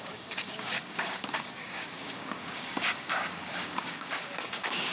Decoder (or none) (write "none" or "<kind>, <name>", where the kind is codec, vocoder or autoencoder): codec, DAC